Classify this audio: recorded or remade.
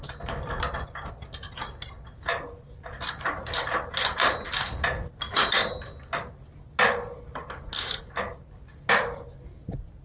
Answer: recorded